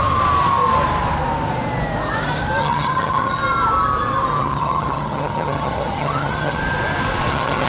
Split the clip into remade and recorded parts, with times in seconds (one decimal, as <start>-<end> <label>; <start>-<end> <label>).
0.0-2.6 recorded; 2.6-3.4 remade; 3.4-4.4 recorded; 4.4-6.6 remade; 6.6-7.3 recorded; 7.3-7.7 remade